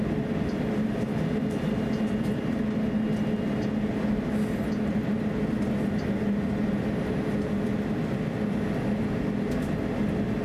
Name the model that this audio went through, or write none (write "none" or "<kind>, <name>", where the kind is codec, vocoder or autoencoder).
none